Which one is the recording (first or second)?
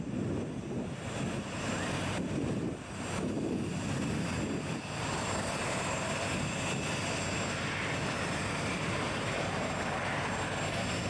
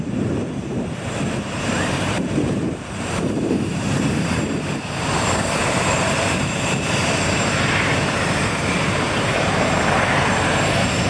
first